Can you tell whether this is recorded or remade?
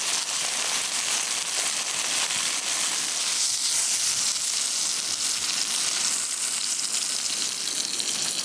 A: recorded